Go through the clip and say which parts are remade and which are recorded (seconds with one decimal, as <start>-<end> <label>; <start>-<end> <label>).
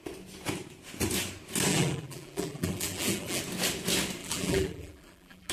0.0-1.7 recorded; 1.7-3.4 remade; 3.4-4.2 recorded; 4.2-5.5 remade